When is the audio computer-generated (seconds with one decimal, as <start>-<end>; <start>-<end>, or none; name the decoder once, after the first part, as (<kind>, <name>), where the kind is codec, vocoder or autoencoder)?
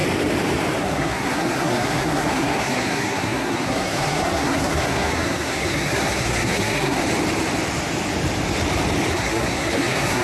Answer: 0.8-7.0 (codec, SNAC); 9.1-10.2